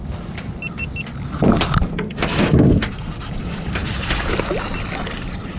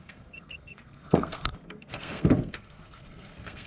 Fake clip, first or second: second